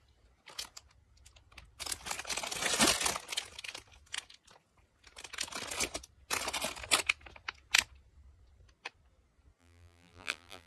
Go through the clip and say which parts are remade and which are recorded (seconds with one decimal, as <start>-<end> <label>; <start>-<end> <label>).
0.0-9.6 recorded; 9.6-10.7 remade